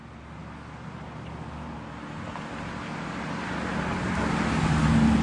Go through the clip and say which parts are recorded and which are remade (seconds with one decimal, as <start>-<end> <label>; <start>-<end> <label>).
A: 0.0-5.2 recorded